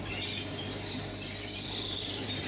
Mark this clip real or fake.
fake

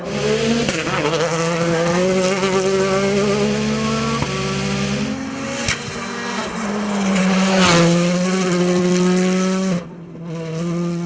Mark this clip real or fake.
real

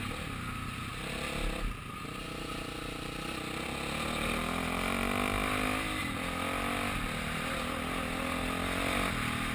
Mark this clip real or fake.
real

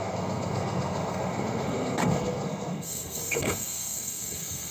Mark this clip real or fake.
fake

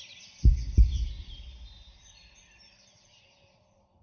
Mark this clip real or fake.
fake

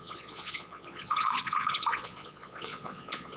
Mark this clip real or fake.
fake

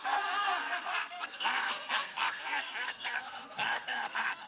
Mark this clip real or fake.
fake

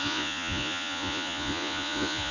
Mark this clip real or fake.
fake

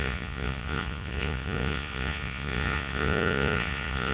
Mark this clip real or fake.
fake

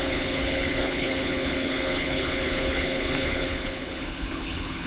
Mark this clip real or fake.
fake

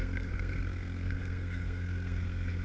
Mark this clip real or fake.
fake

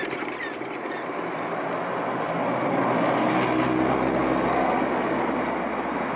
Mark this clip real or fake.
real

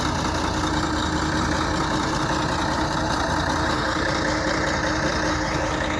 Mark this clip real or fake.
real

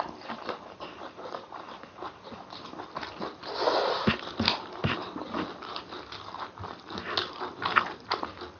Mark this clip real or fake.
real